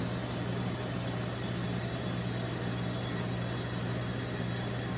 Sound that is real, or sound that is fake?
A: real